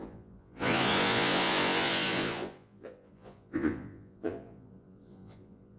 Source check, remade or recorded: remade